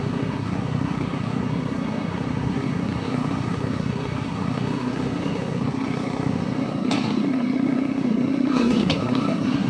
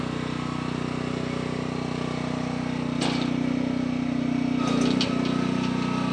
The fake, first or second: first